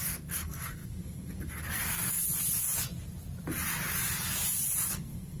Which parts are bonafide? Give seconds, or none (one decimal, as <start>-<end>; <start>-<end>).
2.2-4.9